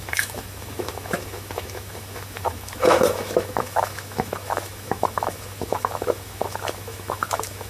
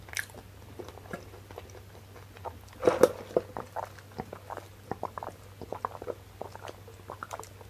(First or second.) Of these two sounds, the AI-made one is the first